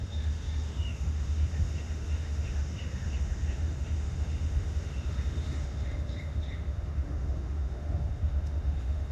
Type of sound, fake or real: fake